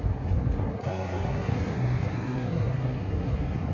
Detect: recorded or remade remade